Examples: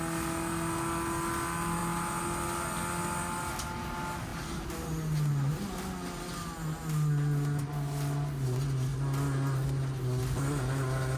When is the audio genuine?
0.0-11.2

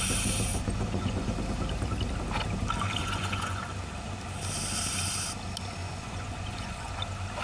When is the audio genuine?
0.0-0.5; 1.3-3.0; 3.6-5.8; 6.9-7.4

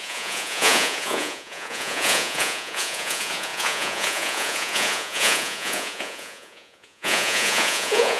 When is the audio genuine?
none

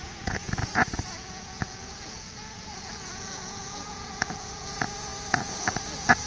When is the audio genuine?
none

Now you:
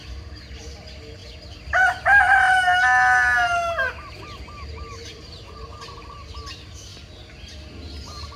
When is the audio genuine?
0.0-8.4

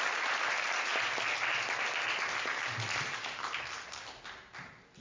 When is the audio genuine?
0.0-5.0